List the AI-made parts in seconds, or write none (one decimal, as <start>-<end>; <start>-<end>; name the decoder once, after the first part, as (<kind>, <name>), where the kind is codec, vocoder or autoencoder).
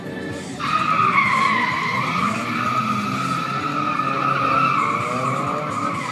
none